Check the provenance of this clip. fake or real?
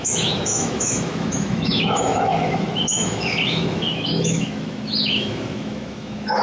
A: fake